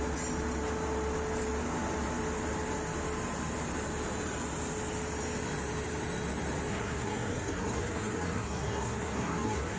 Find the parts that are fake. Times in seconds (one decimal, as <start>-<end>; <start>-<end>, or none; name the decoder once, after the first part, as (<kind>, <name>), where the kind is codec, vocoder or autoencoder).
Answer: 6.7-9.8 (codec, SNAC)